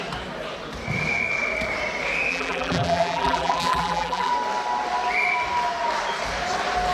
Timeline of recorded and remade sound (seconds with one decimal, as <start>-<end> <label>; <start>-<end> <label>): 0.0-2.3 recorded; 2.3-4.3 remade; 4.3-6.9 recorded